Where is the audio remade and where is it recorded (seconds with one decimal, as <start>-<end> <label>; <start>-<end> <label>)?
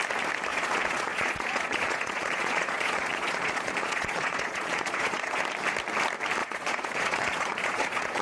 0.0-0.5 recorded; 0.5-5.4 remade; 5.4-6.4 recorded; 6.4-8.2 remade